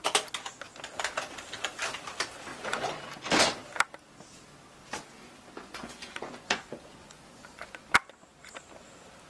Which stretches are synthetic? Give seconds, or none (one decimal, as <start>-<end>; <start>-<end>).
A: 2.5-3.0; 5.6-7.8